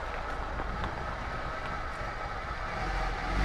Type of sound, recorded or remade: recorded